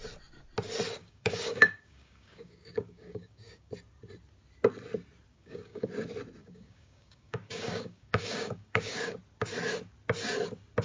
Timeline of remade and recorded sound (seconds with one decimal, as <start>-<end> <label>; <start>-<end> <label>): 0.0-1.0 recorded; 1.0-3.7 remade; 3.7-5.3 recorded; 5.3-5.9 remade; 5.9-6.4 recorded; 6.4-9.2 remade; 9.2-10.8 recorded